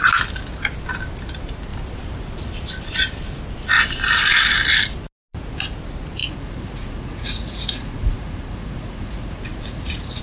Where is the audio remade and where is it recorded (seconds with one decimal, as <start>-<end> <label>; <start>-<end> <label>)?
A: 0.0-6.2 recorded; 6.2-10.2 remade